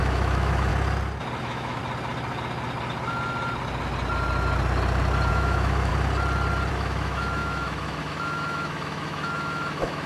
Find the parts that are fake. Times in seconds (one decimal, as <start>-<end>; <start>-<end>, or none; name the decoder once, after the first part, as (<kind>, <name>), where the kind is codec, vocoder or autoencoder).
0.0-0.7 (autoencoder, DAC-VAE); 1.4-1.8; 5.3-5.9; 6.7-10.1